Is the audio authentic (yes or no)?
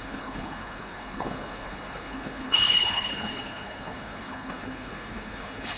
no